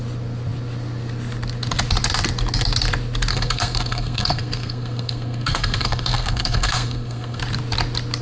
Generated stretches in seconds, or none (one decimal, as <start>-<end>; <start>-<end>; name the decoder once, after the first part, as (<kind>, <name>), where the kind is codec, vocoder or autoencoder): 3.3-7.4 (codec, SNAC)